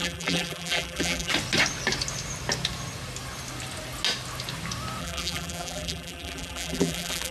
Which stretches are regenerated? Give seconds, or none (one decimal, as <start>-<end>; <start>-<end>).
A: 0.0-1.3; 5.0-7.3